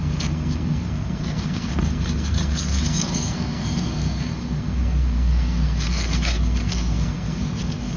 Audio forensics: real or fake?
fake